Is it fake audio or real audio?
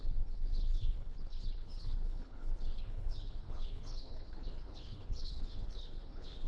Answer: fake